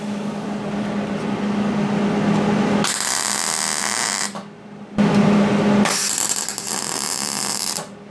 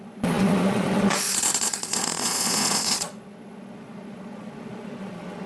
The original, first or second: first